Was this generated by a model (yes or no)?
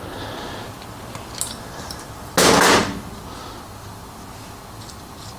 no